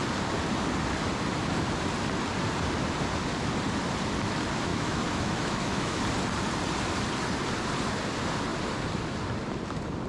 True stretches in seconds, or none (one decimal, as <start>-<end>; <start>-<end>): 0.0-4.7; 6.0-10.1